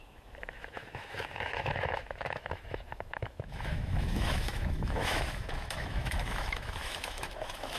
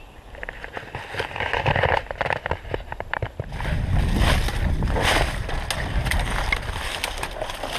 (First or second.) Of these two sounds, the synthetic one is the first